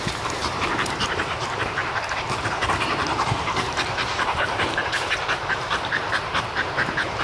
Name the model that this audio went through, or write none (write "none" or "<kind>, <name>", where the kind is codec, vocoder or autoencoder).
vocoder, BigVGAN v2